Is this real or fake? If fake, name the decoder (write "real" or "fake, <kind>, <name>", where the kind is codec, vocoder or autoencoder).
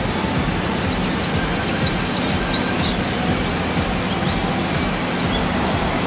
real